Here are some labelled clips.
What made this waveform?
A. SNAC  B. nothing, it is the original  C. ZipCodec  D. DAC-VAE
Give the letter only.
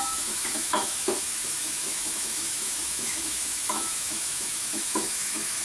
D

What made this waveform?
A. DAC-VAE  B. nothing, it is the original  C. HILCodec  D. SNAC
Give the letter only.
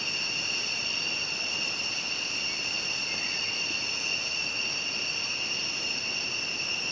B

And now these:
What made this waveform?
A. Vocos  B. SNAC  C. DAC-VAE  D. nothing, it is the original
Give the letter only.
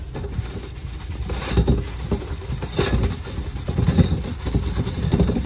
D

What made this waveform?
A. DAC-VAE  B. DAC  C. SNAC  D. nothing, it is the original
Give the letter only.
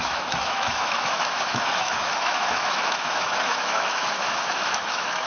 A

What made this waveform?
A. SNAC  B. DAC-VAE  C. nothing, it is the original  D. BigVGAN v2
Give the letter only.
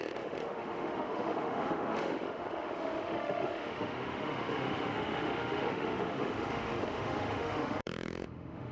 B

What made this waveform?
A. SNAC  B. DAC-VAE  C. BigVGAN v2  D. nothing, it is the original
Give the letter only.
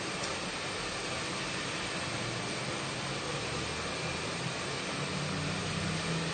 D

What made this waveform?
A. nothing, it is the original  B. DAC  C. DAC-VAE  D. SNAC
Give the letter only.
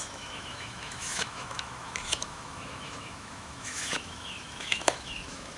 C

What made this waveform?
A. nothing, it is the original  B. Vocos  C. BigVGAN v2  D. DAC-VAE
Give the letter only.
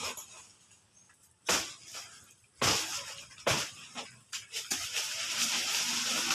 A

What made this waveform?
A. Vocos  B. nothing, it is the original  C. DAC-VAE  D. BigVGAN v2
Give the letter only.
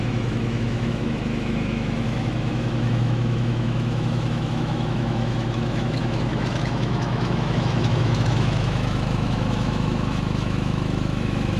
C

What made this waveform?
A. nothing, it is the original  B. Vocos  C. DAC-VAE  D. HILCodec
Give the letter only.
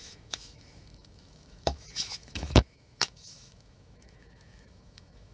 C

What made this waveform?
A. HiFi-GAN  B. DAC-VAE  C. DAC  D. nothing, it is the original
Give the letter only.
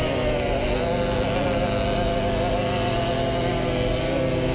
D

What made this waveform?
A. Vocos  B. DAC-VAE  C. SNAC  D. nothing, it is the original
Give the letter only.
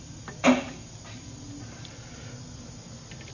D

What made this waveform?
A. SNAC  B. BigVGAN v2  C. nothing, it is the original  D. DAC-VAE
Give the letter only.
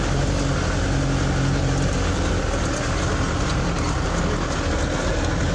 C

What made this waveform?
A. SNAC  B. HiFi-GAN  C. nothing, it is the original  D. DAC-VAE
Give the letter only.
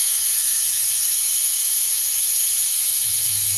D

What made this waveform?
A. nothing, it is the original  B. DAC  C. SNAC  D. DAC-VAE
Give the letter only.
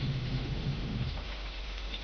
D